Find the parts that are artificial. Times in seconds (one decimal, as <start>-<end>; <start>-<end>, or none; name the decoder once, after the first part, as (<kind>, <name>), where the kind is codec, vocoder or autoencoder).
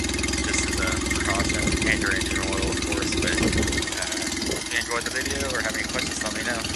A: none